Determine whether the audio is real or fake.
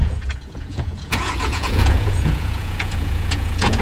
fake